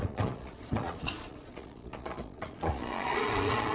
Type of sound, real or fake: fake